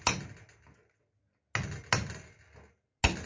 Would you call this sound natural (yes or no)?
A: yes